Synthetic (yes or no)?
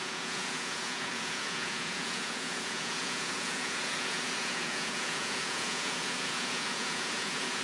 yes